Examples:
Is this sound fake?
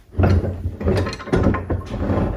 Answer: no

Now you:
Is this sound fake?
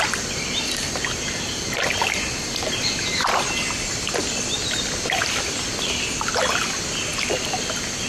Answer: no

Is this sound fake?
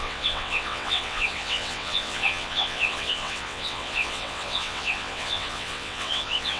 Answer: yes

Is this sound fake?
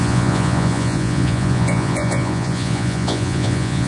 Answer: yes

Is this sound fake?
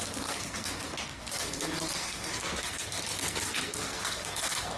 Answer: yes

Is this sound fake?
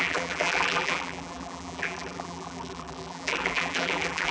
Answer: yes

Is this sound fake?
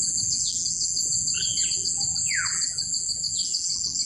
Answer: yes